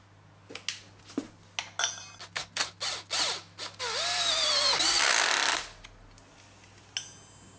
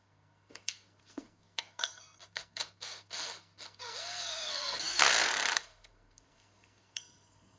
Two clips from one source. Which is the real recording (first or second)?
first